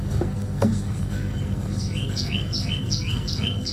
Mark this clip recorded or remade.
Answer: remade